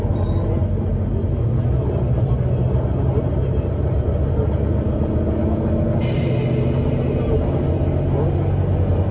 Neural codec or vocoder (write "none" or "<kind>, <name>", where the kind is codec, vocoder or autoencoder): none